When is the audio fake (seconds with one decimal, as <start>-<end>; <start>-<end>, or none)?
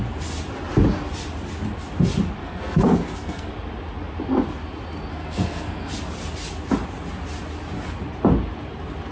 2.4-3.5; 5.1-5.9